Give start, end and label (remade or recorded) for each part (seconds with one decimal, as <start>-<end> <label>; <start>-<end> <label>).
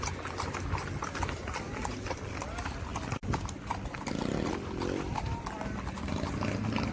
0.0-6.9 recorded